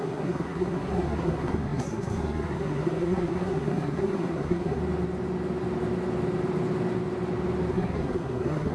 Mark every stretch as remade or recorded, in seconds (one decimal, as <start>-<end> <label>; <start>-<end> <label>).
0.0-4.8 remade; 4.8-7.7 recorded; 7.7-8.7 remade